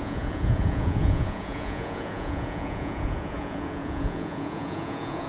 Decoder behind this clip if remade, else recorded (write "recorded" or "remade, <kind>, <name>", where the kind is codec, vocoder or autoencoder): remade, vocoder, Vocos